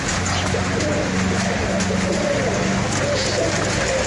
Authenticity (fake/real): real